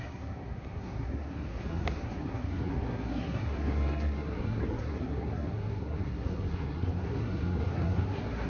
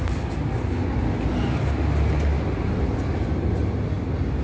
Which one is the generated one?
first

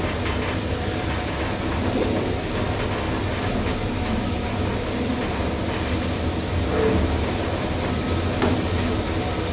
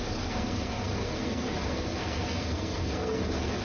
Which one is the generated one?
second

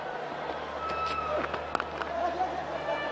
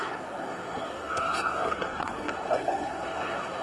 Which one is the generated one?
second